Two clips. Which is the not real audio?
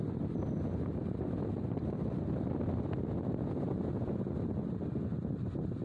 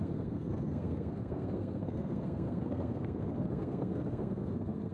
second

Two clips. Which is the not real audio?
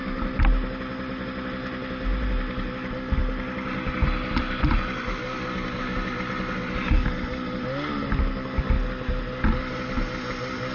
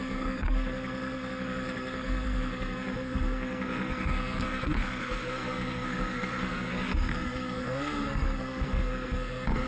second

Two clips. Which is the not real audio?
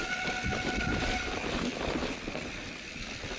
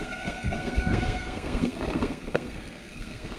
second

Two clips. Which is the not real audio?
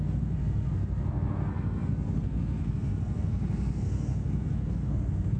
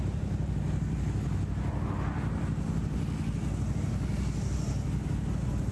first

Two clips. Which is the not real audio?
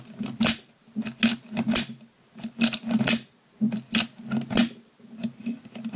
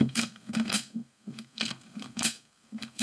second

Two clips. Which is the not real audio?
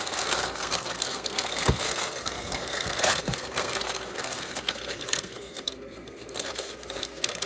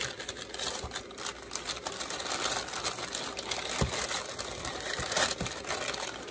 first